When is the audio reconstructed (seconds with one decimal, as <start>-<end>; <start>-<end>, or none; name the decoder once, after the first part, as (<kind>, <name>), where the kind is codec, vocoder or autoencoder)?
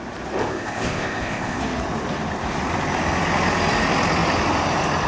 0.4-1.6 (codec, ZipCodec)